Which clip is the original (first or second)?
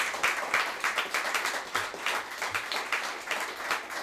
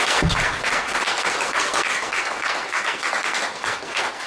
first